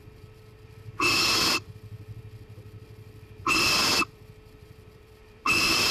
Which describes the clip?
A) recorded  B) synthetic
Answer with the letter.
B